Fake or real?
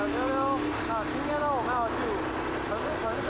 real